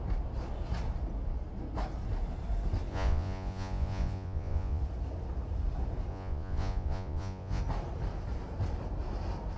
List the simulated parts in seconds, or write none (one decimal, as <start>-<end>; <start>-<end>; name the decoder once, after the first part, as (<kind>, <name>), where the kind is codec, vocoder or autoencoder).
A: 2.9-4.8 (vocoder, Vocos); 6.1-7.6